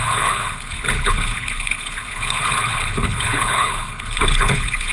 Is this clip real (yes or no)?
no